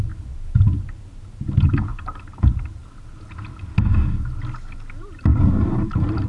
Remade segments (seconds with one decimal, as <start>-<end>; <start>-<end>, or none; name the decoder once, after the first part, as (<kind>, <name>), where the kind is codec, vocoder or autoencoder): 1.9-2.6 (vocoder, BigVGAN v2); 5.3-6.3